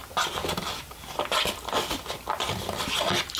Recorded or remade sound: recorded